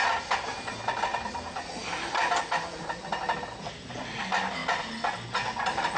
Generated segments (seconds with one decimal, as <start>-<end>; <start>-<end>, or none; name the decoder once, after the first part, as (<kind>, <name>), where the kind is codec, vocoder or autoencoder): none